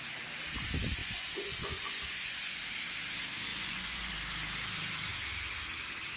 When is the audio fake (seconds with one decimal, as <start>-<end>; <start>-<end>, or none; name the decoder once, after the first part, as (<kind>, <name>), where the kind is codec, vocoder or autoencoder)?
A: 1.0-2.6 (vocoder, Vocos); 3.5-4.1